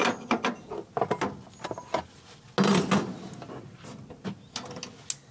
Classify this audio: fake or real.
real